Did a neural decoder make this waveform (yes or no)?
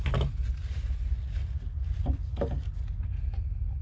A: no